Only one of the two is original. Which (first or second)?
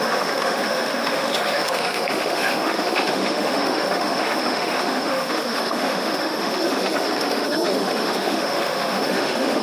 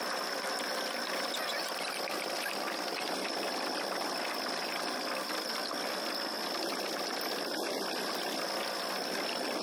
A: second